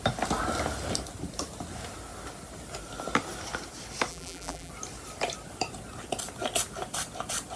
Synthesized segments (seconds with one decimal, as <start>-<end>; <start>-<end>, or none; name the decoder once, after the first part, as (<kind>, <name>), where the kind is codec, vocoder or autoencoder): 4.1-4.7 (vocoder, BigVGAN v2)